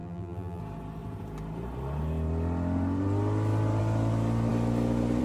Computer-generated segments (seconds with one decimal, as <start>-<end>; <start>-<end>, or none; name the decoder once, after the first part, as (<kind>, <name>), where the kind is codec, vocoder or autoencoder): 0.0-0.6 (vocoder, BigVGAN v2)